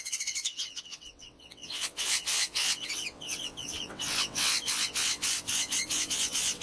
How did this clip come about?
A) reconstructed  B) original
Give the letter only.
A